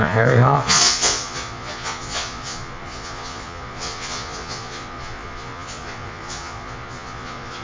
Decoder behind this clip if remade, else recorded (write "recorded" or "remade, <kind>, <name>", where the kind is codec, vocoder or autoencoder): remade, vocoder, Vocos